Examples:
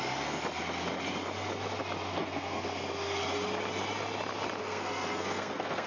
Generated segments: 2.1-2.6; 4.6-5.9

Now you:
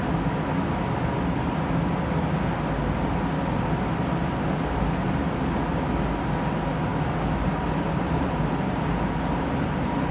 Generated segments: none

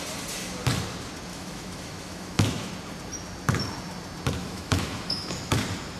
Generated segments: 1.3-2.7; 4.4-5.6

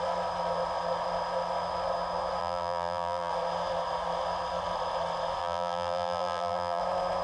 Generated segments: 2.4-3.3; 5.4-6.8

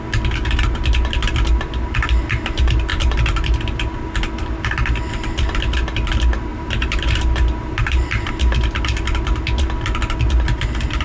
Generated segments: 6.5-8.3

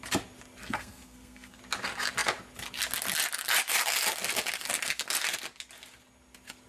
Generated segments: 0.6-1.6